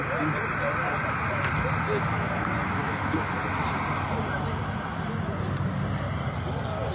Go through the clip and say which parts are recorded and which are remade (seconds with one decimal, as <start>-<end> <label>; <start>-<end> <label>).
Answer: 0.0-2.8 recorded; 2.8-3.4 remade; 3.4-6.9 recorded